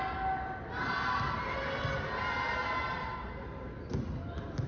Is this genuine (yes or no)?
yes